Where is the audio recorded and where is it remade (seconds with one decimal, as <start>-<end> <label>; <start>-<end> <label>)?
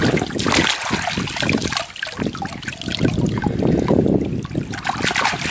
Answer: 0.0-5.5 recorded